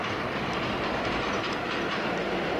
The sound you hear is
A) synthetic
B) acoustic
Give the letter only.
B